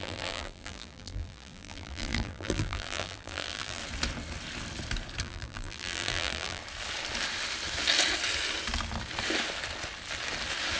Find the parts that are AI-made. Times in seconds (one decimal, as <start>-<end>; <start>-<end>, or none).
0.0-3.8; 5.2-6.6